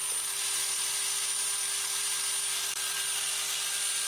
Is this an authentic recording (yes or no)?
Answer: yes